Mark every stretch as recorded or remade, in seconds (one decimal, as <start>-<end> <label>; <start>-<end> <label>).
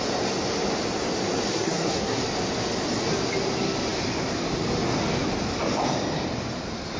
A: 0.0-1.5 recorded; 1.5-2.2 remade; 2.2-7.0 recorded